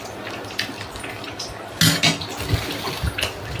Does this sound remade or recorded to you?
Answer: recorded